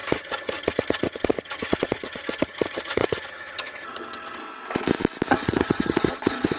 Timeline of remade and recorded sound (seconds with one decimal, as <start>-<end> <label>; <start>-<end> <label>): 0.0-4.4 remade; 4.4-5.3 recorded; 5.3-6.6 remade